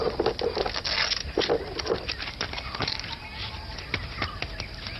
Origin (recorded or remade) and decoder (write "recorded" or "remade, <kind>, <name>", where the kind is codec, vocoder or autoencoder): recorded